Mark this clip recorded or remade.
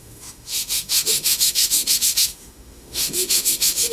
remade